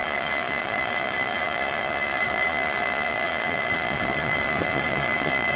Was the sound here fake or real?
fake